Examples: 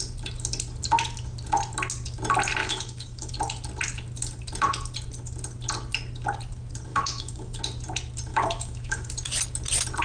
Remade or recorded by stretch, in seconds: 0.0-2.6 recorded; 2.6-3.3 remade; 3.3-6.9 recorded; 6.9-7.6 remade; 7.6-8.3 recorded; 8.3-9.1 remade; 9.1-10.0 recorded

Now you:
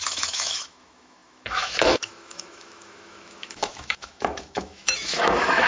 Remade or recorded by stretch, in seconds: 0.0-5.7 remade

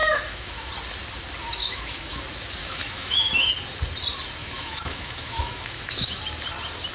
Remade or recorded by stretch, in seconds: 0.0-0.7 remade; 0.7-1.6 recorded; 1.6-2.2 remade; 2.2-2.6 recorded; 2.6-3.5 remade; 3.5-4.4 recorded; 4.4-6.2 remade; 6.2-6.9 recorded

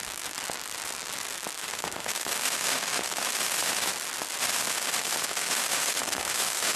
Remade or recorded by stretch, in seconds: 0.0-1.6 recorded; 1.6-3.9 remade; 3.9-4.4 recorded; 4.4-6.8 remade

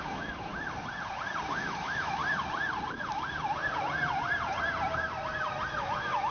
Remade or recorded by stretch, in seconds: 0.0-0.5 remade; 0.5-1.5 recorded; 1.5-2.2 remade; 2.2-5.8 recorded; 5.8-6.3 remade

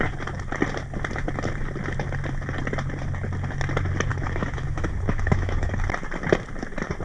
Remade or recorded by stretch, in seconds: 0.0-4.1 recorded; 4.1-5.8 remade; 5.8-7.0 recorded

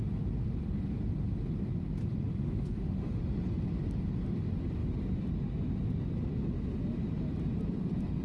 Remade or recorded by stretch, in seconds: 0.0-2.4 recorded; 2.4-3.2 remade; 3.2-8.2 recorded

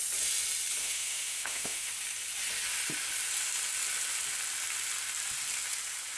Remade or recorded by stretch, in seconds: 0.0-0.8 recorded; 0.8-1.9 remade; 1.9-6.2 recorded